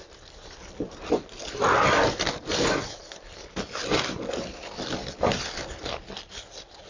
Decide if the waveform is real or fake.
real